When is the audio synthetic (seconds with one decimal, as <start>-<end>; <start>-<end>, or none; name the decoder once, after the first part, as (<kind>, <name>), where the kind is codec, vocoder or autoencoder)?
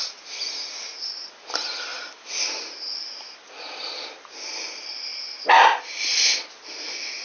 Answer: none